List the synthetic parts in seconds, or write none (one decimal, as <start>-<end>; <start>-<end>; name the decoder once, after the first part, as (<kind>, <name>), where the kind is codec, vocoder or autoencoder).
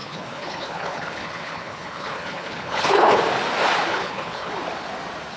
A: 0.0-3.2 (codec, HILCodec); 3.9-4.5